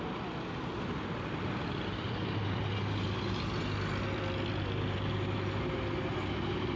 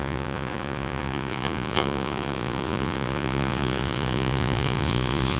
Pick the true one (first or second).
first